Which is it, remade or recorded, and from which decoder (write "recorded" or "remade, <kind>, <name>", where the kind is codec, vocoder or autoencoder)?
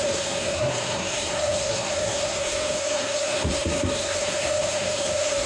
remade, codec, SNAC